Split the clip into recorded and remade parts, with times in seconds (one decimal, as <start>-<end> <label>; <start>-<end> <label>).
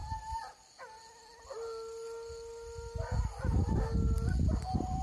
0.0-0.8 remade; 0.8-5.0 recorded